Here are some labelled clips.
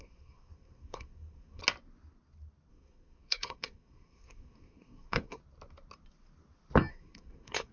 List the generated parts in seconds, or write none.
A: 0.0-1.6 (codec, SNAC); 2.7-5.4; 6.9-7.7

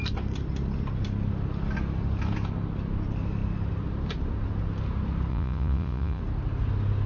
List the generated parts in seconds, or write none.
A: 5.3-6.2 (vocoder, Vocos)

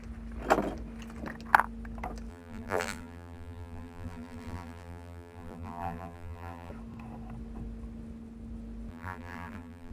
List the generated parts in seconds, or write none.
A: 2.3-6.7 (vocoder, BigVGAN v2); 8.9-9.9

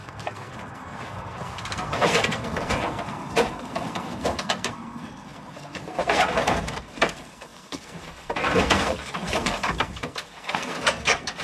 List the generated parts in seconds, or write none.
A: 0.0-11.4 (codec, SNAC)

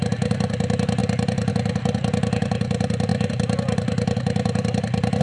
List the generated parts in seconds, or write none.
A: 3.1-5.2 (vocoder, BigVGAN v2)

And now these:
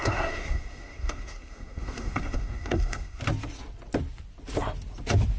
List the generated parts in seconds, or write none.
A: 0.0-3.2 (codec, SNAC)

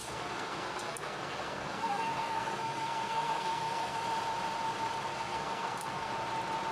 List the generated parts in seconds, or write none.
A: 0.0-4.0 (codec, SNAC); 5.1-6.1